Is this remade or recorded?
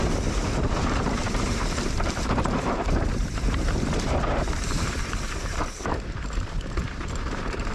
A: remade